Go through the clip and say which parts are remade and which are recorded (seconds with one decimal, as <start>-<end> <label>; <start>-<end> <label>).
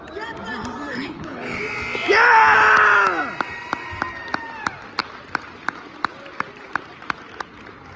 0.0-0.9 recorded; 0.9-1.6 remade; 1.6-8.0 recorded